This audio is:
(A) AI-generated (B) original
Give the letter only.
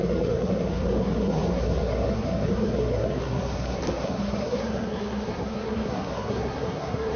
A